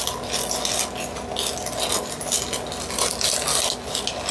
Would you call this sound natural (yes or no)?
yes